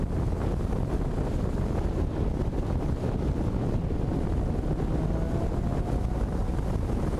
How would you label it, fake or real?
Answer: real